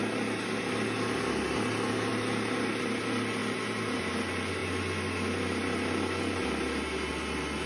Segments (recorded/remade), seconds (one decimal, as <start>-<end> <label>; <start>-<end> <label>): 0.0-7.7 recorded

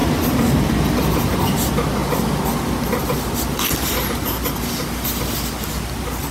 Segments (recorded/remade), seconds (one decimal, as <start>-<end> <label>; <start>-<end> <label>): 0.0-0.7 remade; 0.7-6.3 recorded

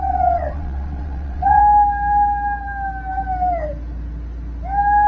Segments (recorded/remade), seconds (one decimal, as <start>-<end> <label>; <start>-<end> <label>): 0.0-1.6 remade; 1.6-5.1 recorded